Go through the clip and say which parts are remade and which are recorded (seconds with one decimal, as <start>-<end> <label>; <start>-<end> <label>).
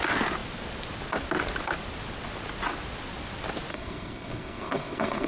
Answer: 0.0-3.7 recorded; 3.7-5.3 remade